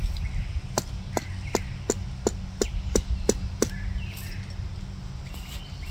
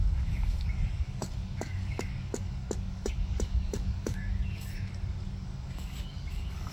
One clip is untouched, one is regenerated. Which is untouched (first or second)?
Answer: first